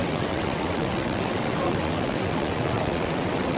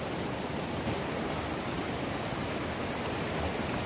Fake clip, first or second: first